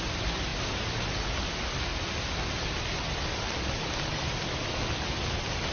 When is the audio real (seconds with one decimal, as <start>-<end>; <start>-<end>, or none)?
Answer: 0.0-5.7